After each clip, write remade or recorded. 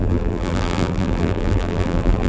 remade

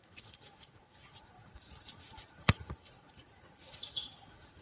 remade